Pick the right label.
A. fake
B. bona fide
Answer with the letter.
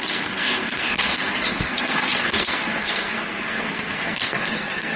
A